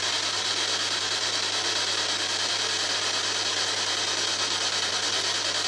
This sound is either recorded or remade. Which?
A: recorded